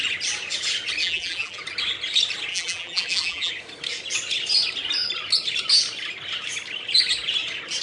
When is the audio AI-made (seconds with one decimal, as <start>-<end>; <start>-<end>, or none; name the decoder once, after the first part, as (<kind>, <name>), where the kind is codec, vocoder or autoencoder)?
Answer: 1.0-1.6 (vocoder, BigVGAN v2); 2.5-3.5